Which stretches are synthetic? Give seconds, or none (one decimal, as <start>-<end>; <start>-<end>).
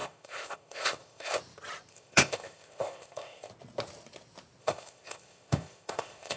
0.0-1.4; 1.9-3.5; 4.6-6.4